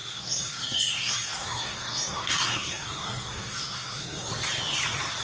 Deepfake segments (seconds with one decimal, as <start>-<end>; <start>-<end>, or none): 0.0-4.3